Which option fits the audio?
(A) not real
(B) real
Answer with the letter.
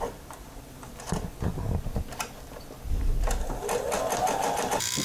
B